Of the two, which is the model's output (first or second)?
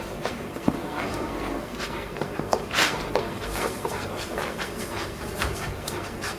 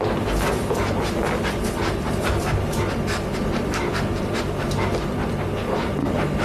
first